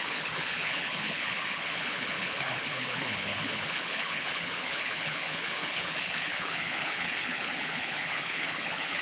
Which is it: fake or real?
fake